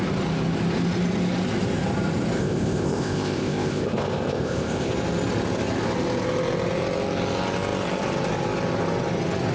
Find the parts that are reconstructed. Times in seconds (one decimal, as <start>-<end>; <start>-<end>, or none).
2.4-4.9